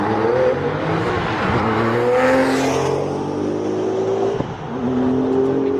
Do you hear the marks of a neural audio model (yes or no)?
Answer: no